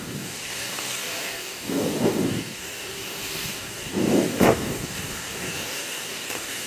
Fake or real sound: fake